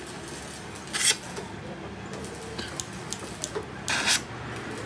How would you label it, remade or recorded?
recorded